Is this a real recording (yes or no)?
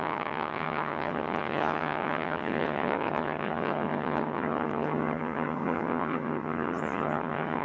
no